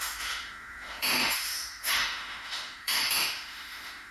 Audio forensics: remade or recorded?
remade